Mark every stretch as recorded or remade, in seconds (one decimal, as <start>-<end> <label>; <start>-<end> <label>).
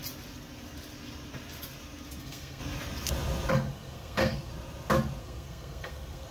0.0-2.2 recorded; 2.2-2.6 remade; 2.6-3.5 recorded; 3.5-4.5 remade; 4.5-5.2 recorded; 5.2-6.3 remade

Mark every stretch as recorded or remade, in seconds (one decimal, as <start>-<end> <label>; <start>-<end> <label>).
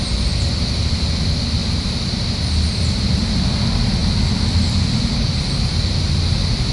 0.0-6.7 recorded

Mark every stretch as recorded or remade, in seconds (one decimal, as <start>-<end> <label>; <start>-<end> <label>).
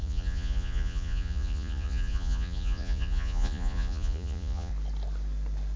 0.0-4.7 remade; 4.7-5.8 recorded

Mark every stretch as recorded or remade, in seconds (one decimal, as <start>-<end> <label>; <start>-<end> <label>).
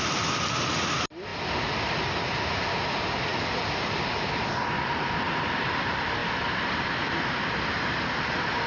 0.0-1.3 recorded; 1.3-2.7 remade; 2.7-3.3 recorded; 3.3-4.0 remade; 4.0-8.7 recorded